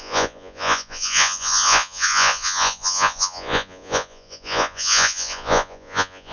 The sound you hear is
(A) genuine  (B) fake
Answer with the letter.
B